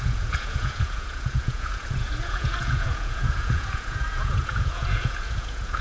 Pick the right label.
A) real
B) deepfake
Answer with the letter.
B